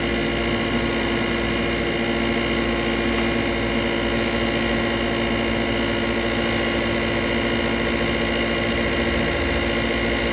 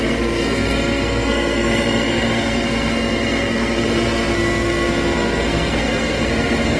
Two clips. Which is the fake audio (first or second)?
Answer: second